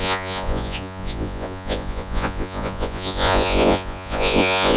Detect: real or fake fake